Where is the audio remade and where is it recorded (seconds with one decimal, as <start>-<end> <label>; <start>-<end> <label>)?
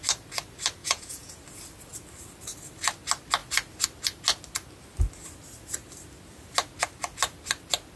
0.0-0.8 recorded; 0.8-1.4 remade; 1.4-8.0 recorded